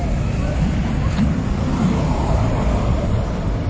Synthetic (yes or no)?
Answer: no